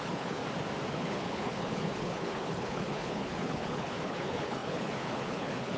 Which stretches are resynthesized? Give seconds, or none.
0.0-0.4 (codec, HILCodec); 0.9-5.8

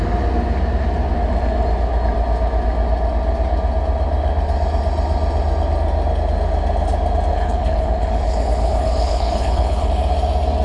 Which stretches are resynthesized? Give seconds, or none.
7.3-9.9 (codec, HILCodec)

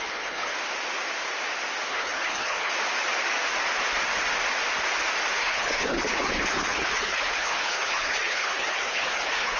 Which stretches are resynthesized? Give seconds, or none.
0.0-0.5 (codec, HILCodec); 1.9-2.7; 5.4-9.6

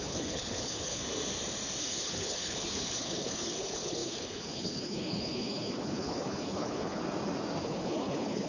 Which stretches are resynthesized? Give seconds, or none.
0.0-1.0 (codec, HILCodec); 1.8-7.0; 7.6-8.5

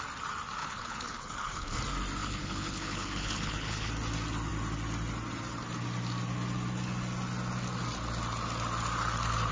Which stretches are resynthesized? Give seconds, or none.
0.6-1.8 (codec, HILCodec); 2.2-3.9

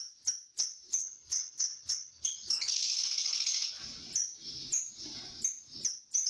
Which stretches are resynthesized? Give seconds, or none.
1.0-3.8 (codec, HILCodec)